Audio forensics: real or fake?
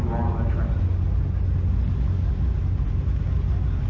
real